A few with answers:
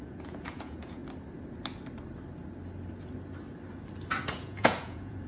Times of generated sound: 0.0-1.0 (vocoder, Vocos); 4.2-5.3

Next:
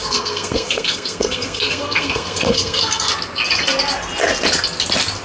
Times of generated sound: 0.0-3.1 (codec, SNAC)